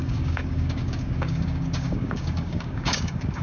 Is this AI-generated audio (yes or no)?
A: yes